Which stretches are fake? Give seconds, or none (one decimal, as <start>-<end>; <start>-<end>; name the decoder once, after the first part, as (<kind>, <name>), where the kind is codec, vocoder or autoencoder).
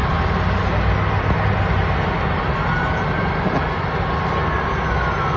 none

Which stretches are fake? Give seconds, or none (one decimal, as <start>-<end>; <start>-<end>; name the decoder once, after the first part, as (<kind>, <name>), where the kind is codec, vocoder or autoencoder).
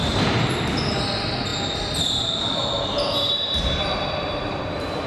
0.0-0.6 (vocoder, BigVGAN v2); 1.5-4.6